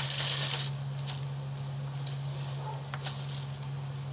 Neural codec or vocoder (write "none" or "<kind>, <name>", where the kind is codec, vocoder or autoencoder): none